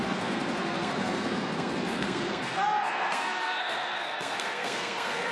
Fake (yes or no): yes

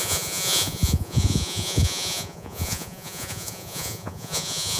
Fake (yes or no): yes